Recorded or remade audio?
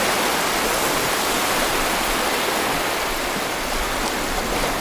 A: recorded